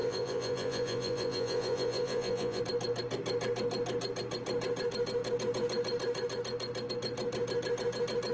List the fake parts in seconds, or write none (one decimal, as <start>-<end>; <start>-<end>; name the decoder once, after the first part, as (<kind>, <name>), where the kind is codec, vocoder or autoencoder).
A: 0.0-2.6 (vocoder, Vocos)